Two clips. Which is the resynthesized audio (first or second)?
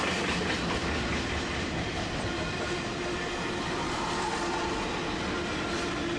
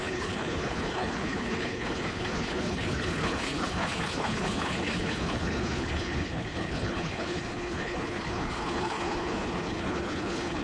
second